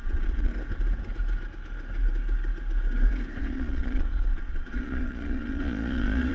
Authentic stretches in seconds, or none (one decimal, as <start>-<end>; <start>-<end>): 0.5-3.4